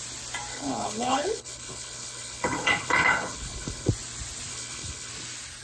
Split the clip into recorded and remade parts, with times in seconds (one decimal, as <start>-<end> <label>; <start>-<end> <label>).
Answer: 0.0-0.5 recorded; 0.5-3.9 remade; 3.9-4.5 recorded; 4.5-5.1 remade; 5.1-5.6 recorded